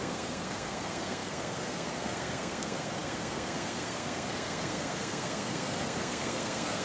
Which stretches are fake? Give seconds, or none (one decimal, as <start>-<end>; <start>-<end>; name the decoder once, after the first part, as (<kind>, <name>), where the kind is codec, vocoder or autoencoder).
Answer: 0.0-6.8 (codec, SNAC)